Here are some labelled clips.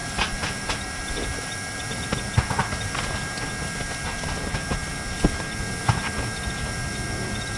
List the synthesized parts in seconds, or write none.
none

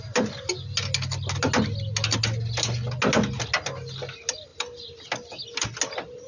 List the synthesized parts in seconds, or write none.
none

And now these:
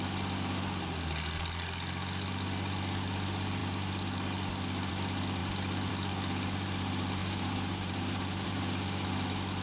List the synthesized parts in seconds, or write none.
7.2-8.6

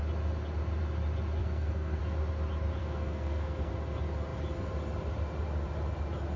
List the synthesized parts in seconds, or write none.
1.4-2.0; 2.8-3.7

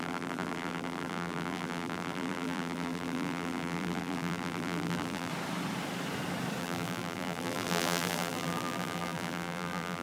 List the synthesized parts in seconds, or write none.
0.0-5.3; 6.6-10.0

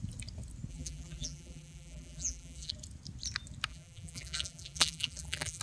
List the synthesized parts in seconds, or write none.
0.7-2.7; 3.7-5.6

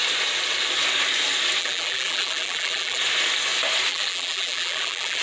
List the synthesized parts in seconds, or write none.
1.6-3.0; 3.9-5.2